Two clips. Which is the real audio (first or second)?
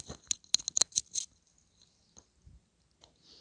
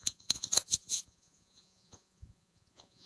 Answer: first